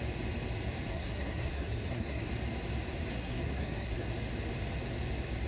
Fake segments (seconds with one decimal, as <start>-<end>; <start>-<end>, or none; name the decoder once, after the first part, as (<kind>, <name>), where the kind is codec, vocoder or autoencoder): 0.9-2.3 (codec, SNAC); 3.1-4.1